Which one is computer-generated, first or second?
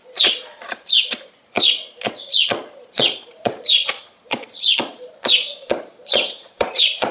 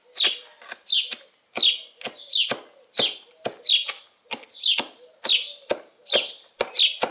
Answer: first